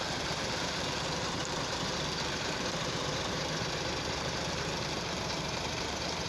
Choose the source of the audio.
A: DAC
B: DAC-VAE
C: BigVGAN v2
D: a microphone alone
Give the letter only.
C